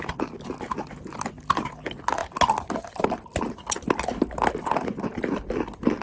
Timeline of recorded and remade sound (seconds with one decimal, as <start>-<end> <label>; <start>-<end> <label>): 0.0-6.0 recorded